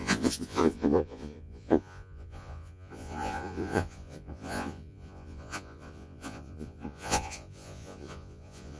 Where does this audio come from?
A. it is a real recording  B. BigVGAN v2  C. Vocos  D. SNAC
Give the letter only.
C